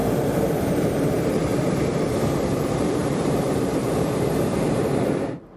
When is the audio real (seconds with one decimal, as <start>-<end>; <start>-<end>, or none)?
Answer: 0.0-0.6; 1.5-2.6